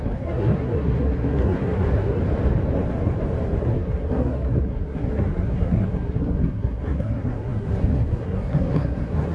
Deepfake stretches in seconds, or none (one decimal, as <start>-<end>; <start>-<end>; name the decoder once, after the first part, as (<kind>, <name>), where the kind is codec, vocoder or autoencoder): 0.0-2.2 (codec, SNAC); 3.6-9.3